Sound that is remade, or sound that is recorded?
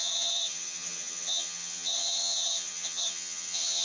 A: remade